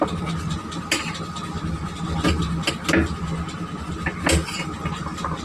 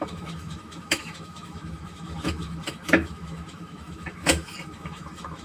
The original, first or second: first